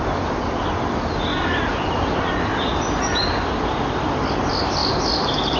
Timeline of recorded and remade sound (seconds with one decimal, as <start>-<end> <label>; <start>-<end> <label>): 0.0-5.6 recorded